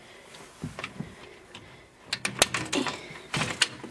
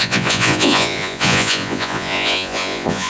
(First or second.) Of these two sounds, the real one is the first